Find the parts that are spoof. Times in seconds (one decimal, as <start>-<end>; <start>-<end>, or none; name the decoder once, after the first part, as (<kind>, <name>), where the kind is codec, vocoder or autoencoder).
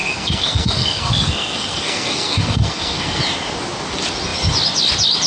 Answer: 0.0-3.2 (codec, SNAC)